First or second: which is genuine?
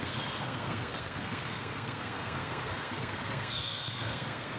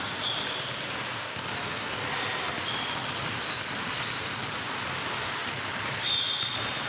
second